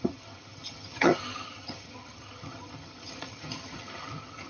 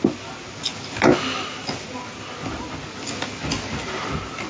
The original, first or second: second